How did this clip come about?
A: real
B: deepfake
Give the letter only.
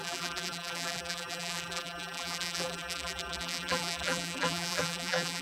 B